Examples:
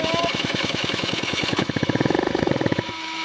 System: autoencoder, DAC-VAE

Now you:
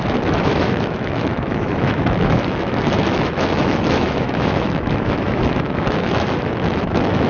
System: autoencoder, DAC-VAE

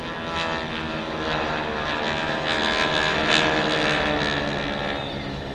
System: none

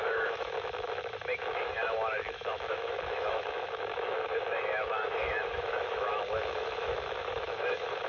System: autoencoder, DAC-VAE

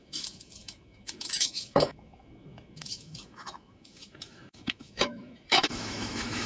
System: autoencoder, DAC-VAE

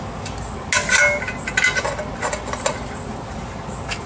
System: none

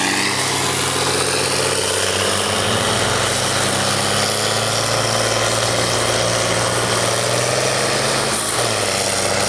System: none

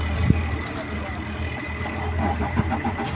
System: none